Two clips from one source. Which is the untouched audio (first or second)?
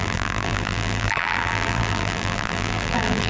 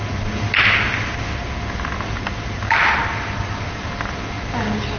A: second